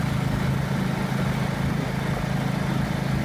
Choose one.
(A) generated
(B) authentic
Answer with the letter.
B